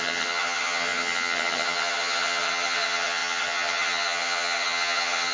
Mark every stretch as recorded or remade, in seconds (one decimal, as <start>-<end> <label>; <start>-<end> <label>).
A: 0.0-5.3 remade